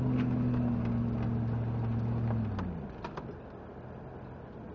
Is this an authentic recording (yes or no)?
yes